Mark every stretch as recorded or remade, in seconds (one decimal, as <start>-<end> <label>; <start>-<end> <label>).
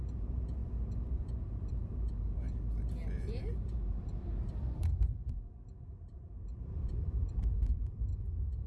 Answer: 0.0-0.6 remade; 0.6-1.1 recorded; 1.1-8.1 remade; 8.1-8.7 recorded